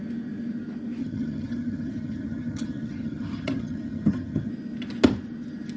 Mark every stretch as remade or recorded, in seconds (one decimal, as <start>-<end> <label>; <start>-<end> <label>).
0.0-1.0 recorded; 1.0-4.5 remade; 4.5-5.8 recorded